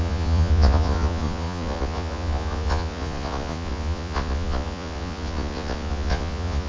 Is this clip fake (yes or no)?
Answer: yes